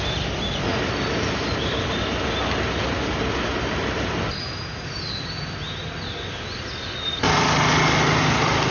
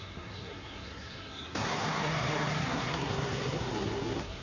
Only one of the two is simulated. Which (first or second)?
second